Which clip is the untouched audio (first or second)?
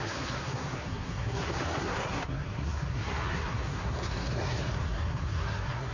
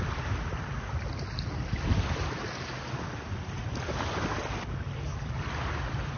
second